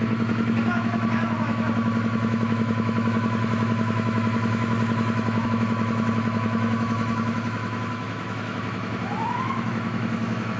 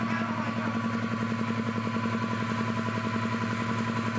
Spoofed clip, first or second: first